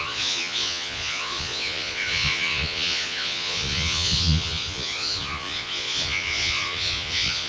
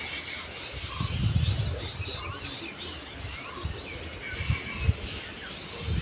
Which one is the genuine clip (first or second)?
second